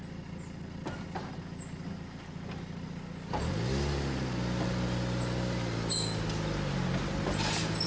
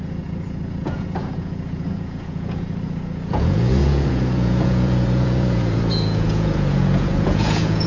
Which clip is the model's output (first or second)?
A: second